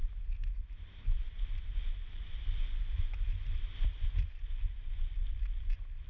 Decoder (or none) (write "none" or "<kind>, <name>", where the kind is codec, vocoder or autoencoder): none